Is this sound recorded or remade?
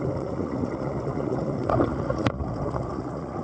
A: remade